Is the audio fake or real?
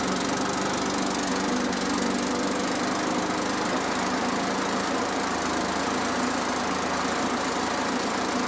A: real